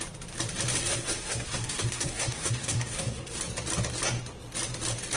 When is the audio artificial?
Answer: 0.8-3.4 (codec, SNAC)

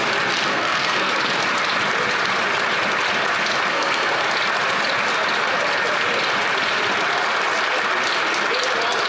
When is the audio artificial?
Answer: 0.5-1.1 (codec, SNAC); 3.7-4.2

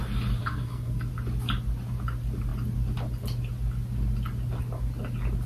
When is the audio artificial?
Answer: 0.4-1.1 (codec, SNAC)

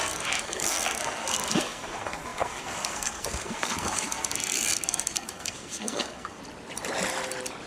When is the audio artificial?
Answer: 0.0-6.4 (codec, SNAC)

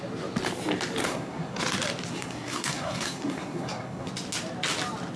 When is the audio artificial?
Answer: 1.0-1.6 (codec, SNAC); 2.1-4.1

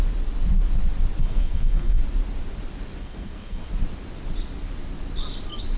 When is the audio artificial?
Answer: 1.2-2.0 (codec, SNAC); 3.0-3.7

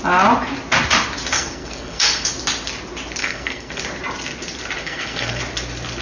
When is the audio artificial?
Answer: 1.3-2.3 (codec, SNAC); 3.2-3.8; 4.8-5.4